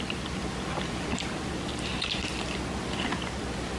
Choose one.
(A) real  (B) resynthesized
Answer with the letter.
A